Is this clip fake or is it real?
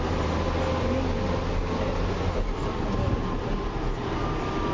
real